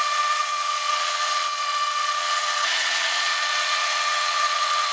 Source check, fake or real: fake